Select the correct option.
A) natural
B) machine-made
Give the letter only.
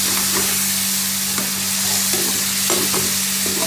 A